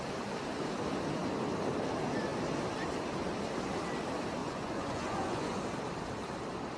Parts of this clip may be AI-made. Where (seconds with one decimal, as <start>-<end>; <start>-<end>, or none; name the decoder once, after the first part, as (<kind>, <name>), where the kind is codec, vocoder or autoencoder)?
4.4-5.6 (vocoder, Vocos)